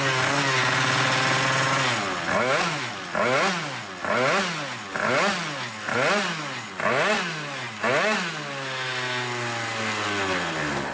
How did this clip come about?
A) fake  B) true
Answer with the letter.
B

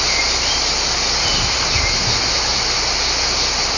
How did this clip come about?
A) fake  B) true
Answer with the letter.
B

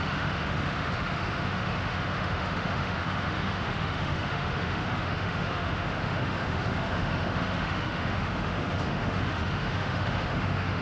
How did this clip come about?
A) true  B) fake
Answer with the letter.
B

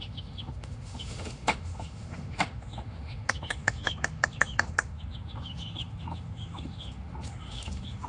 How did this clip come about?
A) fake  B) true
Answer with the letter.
A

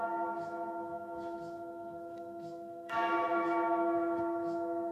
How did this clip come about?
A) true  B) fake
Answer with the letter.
B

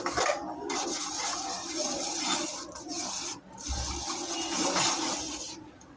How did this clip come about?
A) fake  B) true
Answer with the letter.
B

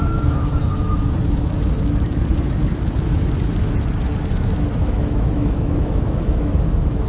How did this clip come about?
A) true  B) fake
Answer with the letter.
B